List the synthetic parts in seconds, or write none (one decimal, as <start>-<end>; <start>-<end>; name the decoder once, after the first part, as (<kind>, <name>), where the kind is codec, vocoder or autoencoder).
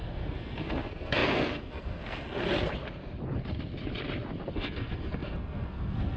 0.0-2.4 (codec, SNAC); 4.5-6.2